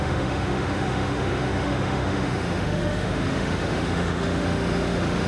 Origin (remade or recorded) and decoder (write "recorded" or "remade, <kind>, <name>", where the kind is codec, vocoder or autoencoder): remade, autoencoder, DAC-VAE